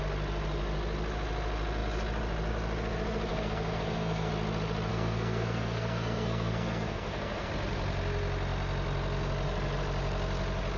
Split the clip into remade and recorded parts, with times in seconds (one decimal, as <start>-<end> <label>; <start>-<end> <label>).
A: 0.0-3.3 recorded; 3.3-4.3 remade; 4.3-4.9 recorded; 4.9-7.5 remade; 7.5-10.8 recorded